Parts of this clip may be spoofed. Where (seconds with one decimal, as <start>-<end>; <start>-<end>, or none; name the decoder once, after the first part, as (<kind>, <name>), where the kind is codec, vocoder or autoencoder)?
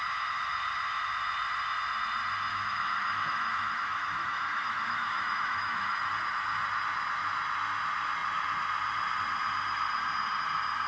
2.5-6.1 (autoencoder, DAC-VAE)